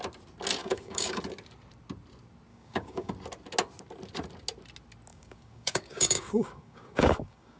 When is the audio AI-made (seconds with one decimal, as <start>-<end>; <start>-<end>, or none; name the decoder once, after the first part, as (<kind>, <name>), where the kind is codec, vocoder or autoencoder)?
0.6-1.2 (codec, DAC); 2.5-3.1; 5.1-7.6